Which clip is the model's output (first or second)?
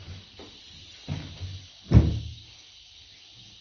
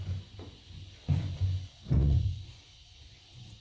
second